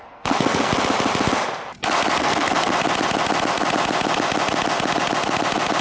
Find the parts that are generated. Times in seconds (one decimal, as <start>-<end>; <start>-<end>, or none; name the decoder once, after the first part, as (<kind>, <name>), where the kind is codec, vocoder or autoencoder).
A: 0.0-0.7 (codec, SNAC); 2.2-2.7